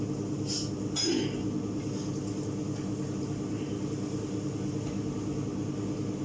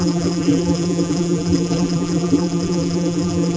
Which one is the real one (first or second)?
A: first